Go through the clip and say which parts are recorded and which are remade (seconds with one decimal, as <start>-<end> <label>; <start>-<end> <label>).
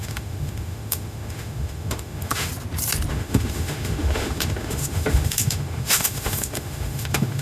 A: 0.0-2.5 remade; 2.5-3.1 recorded; 3.1-7.4 remade